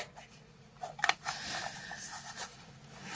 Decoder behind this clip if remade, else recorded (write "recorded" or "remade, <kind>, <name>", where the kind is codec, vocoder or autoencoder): recorded